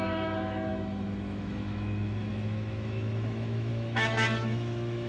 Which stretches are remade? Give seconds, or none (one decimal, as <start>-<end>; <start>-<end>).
0.0-5.1